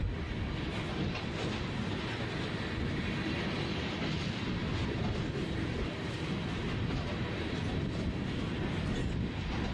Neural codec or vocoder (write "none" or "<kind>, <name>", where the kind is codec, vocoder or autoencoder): none